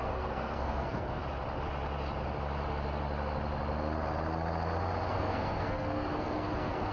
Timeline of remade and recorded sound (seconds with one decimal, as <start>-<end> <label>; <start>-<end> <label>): 0.0-1.2 remade; 1.2-5.1 recorded; 5.1-6.9 remade